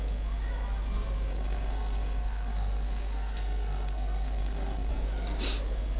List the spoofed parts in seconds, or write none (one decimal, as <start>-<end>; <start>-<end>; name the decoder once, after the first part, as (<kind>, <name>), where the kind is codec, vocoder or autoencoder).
1.3-4.9 (codec, SNAC)

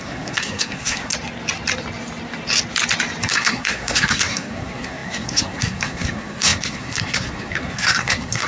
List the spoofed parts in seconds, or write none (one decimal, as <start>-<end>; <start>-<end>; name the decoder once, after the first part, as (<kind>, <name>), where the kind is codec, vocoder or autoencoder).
0.0-1.1 (codec, SNAC); 3.3-8.5

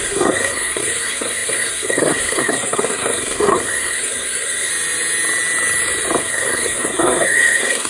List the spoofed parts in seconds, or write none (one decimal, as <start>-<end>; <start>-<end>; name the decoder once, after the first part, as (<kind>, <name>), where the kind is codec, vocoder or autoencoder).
0.0-4.7 (codec, SNAC); 6.2-7.9

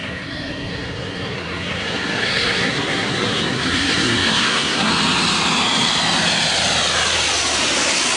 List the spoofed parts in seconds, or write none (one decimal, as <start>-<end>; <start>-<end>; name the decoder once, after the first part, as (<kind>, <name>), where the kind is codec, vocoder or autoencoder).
0.0-4.9 (codec, SNAC)

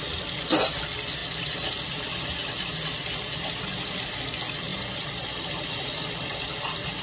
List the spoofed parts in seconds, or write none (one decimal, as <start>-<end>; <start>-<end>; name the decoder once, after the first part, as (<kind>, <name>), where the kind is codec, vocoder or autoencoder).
none